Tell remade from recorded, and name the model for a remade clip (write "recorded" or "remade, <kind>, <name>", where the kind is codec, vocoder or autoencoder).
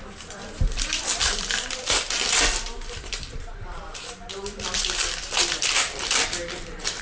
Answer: remade, vocoder, BigVGAN v2